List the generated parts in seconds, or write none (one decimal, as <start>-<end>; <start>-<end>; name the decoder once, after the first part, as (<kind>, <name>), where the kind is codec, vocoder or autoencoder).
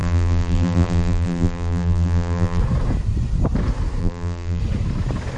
0.0-2.6 (vocoder, BigVGAN v2); 4.0-4.6